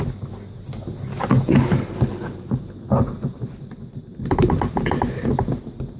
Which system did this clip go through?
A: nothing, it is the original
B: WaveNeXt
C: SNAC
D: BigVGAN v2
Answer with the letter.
A